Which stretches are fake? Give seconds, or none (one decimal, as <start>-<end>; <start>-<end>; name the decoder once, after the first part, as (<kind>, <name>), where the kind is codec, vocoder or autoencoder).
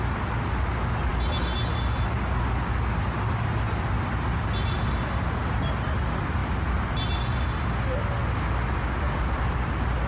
none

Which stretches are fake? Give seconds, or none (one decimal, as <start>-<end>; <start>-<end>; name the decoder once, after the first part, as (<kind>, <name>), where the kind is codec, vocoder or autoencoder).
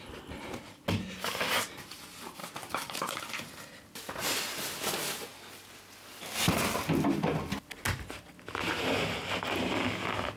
2.4-3.2 (codec, DAC)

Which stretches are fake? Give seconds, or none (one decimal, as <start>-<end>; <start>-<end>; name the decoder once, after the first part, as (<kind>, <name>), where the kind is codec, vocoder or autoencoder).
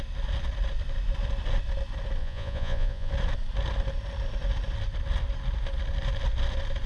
2.2-3.1 (vocoder, Vocos)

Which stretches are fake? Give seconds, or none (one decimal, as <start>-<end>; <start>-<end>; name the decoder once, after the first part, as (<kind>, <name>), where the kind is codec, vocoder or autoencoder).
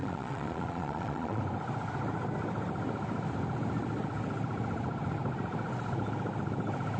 0.0-1.4 (vocoder, Vocos)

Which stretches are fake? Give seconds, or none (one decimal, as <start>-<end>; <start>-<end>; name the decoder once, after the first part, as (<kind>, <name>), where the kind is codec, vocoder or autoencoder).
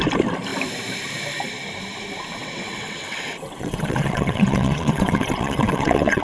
2.4-6.2 (vocoder, WaveNeXt)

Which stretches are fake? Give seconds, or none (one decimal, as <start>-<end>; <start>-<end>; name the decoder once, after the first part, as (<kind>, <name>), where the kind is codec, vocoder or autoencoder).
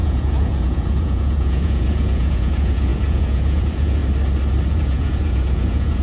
0.0-4.0 (vocoder, Vocos); 4.7-6.0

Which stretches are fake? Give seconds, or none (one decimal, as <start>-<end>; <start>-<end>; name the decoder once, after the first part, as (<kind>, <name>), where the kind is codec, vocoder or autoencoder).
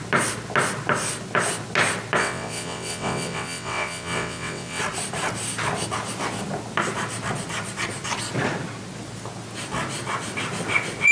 2.2-4.8 (vocoder, WaveNeXt)